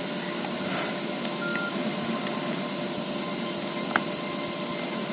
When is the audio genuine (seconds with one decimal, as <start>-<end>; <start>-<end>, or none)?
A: 0.0-5.1